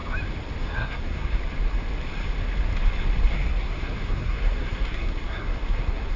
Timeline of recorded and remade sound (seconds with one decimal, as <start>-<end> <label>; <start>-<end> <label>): 0.0-0.6 recorded; 0.6-1.4 remade; 1.4-3.3 recorded; 3.3-6.2 remade